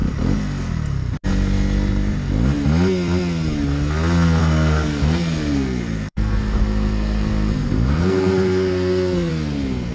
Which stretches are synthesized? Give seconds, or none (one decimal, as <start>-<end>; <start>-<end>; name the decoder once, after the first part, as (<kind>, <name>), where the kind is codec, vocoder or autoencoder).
4.4-9.3 (codec, SNAC)